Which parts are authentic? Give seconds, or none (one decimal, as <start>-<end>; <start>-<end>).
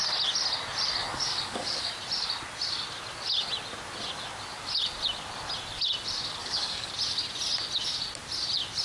0.0-1.0; 1.9-6.4; 6.9-8.8